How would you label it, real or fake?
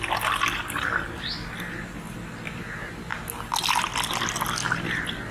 real